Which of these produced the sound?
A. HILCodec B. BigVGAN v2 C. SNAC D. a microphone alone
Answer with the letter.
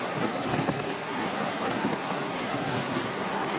C